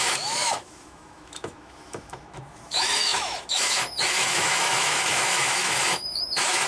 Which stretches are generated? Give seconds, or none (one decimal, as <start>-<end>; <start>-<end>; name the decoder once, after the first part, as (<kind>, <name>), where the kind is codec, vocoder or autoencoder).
0.0-6.7 (autoencoder, DAC-VAE)